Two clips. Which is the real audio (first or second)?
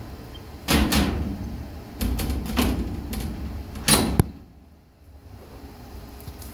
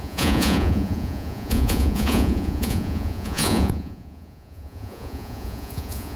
first